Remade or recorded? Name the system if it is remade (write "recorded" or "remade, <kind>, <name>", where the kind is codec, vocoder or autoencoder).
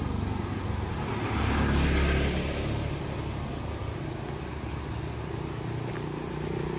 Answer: recorded